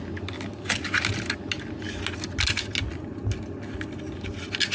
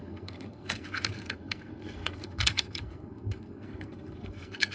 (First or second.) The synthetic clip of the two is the second